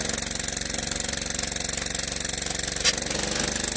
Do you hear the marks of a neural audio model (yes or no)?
no